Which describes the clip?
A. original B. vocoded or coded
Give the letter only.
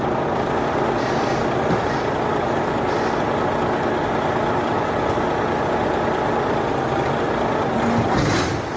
A